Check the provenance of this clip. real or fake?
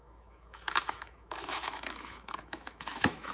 fake